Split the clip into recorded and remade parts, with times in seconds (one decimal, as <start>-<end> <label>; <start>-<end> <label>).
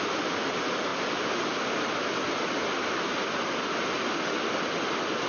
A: 0.0-5.3 recorded